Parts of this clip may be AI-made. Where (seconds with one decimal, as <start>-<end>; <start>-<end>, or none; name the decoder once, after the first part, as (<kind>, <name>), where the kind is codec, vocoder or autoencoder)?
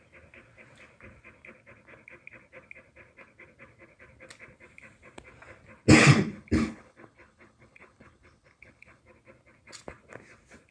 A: 6.0-9.0 (codec, HILCodec)